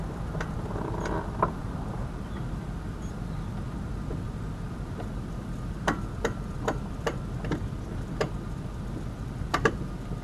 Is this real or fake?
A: fake